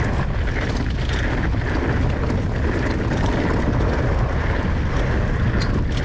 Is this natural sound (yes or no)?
yes